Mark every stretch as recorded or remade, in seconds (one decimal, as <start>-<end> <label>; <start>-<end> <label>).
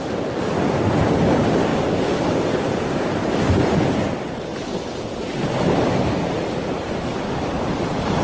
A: 0.0-1.7 remade; 1.7-3.4 recorded; 3.4-7.5 remade; 7.5-8.2 recorded